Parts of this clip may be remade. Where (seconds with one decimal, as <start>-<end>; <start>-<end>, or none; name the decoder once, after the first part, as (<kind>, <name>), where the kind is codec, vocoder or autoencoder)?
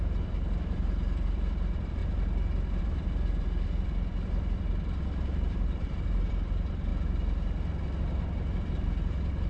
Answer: 0.0-2.0 (vocoder, BigVGAN v2); 2.8-6.9; 8.6-9.5